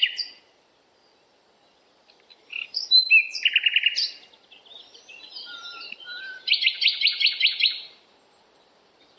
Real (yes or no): yes